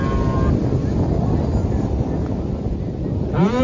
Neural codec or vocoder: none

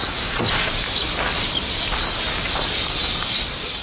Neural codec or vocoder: none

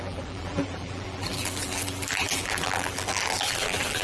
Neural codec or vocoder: vocoder, BigVGAN v2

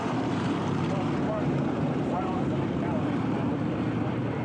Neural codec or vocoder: vocoder, BigVGAN v2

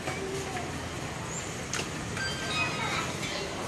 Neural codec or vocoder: none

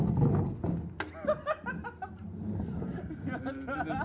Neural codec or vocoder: none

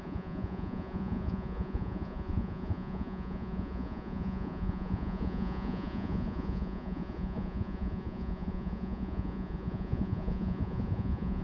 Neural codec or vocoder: vocoder, Vocos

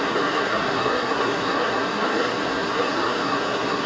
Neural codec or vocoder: codec, SNAC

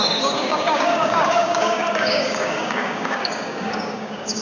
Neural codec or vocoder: codec, DAC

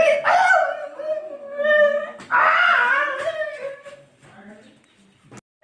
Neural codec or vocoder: none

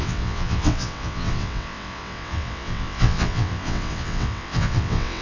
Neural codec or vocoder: vocoder, WaveNeXt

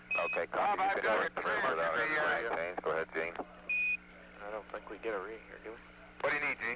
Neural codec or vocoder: none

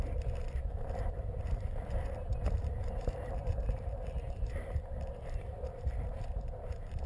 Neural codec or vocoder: vocoder, BigVGAN v2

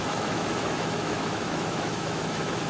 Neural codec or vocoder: autoencoder, DAC-VAE